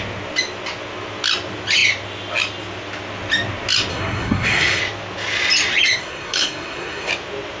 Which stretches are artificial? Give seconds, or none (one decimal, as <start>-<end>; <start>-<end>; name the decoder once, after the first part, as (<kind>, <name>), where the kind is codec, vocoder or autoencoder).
3.9-4.8 (codec, SNAC); 6.0-7.1